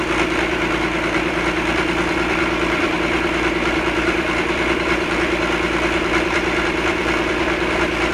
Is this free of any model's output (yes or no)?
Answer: no